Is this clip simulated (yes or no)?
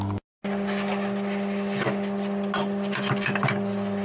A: no